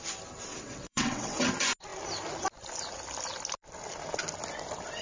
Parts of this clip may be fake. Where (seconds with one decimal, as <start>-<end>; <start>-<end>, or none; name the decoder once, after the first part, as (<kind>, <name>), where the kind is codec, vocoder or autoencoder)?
0.5-1.5 (vocoder, WaveNeXt)